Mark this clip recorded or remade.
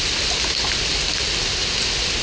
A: recorded